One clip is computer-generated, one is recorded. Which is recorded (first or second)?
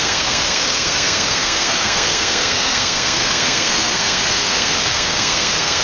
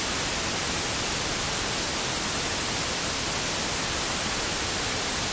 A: second